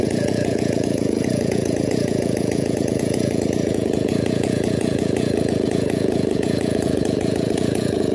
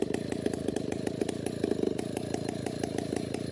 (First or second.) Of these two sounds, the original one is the second